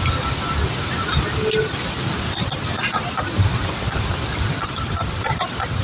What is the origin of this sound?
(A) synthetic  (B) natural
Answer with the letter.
B